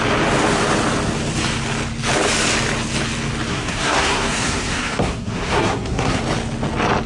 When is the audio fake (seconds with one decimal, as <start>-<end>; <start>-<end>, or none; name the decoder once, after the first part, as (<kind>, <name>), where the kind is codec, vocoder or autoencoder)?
3.5-6.2 (codec, SNAC)